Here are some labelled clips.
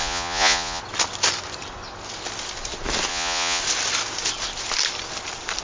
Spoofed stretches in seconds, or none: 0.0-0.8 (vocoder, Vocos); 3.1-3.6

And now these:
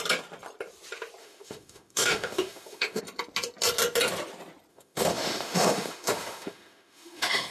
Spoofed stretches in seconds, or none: 1.2-3.0 (autoencoder, DAC-VAE); 4.7-7.5

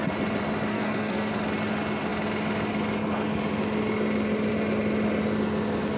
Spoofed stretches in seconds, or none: 0.7-1.3 (codec, SNAC)